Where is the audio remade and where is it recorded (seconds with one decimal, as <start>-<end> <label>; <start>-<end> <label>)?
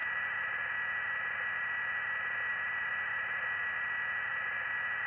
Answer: 0.0-0.6 remade; 0.6-2.5 recorded; 2.5-3.6 remade; 3.6-5.1 recorded